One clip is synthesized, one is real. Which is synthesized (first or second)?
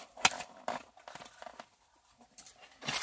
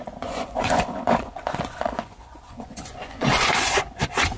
second